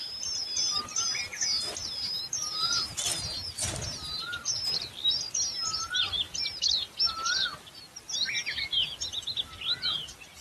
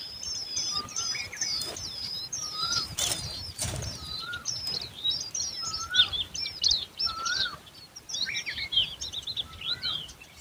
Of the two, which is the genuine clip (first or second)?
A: first